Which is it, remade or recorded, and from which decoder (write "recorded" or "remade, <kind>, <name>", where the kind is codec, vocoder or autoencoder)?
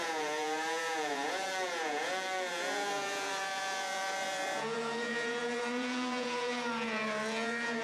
remade, vocoder, Vocos